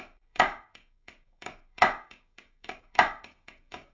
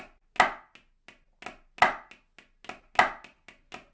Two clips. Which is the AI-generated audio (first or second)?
first